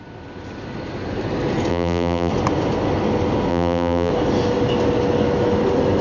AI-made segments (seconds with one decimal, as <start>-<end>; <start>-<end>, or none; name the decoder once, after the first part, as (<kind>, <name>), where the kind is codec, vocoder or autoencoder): 1.7-2.3 (vocoder, BigVGAN v2); 3.5-4.1